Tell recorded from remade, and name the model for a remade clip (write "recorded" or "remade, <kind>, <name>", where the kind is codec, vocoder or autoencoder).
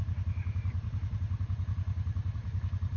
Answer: remade, vocoder, BigVGAN v2